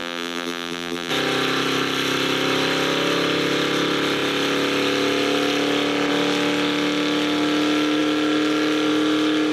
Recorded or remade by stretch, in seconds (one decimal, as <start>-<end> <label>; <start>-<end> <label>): 0.0-1.1 remade; 1.1-9.5 recorded